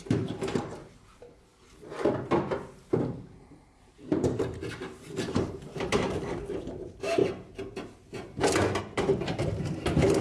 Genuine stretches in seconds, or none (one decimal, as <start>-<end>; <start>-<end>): 0.8-3.0; 7.2-8.8